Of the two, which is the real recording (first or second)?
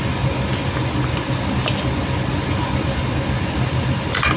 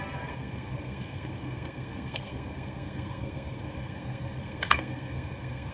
first